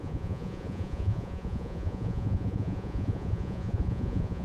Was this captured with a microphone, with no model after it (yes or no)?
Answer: no